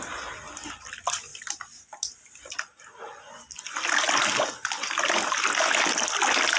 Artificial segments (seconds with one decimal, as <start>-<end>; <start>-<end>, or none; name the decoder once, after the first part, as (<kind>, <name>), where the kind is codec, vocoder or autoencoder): none